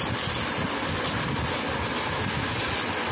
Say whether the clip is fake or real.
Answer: real